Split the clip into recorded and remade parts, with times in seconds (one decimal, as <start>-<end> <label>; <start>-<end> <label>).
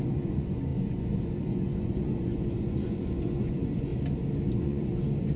0.0-3.9 remade; 3.9-4.5 recorded; 4.5-5.4 remade